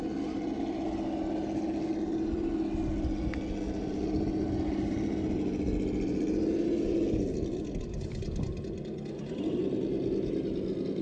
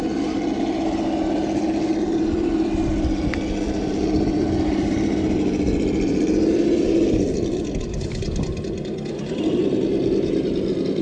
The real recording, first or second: first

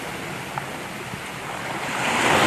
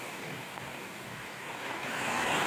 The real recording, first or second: first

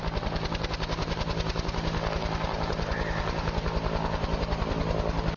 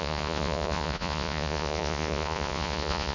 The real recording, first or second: first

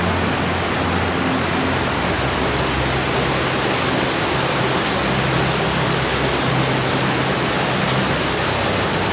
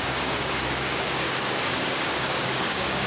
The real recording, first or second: first